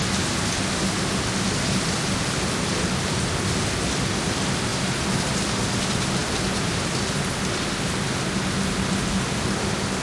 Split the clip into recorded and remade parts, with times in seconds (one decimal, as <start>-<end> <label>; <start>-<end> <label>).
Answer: 0.0-10.0 recorded